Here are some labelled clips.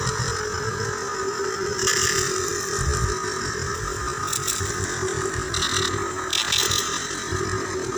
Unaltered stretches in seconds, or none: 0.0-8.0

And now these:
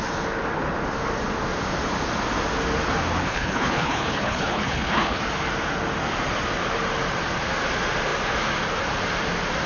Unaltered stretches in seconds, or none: 0.0-3.3; 5.2-9.7

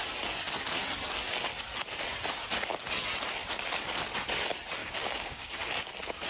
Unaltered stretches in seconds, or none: 0.0-4.8; 5.5-6.3

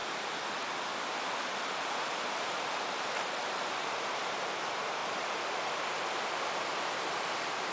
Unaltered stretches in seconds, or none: 0.0-2.3